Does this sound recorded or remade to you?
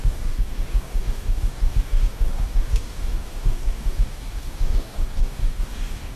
remade